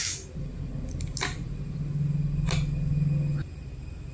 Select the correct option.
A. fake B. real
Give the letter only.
B